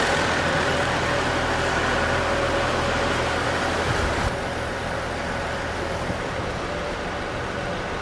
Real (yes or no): yes